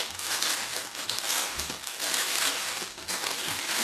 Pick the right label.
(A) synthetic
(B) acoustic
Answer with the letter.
A